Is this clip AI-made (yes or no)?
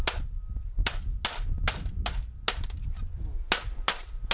no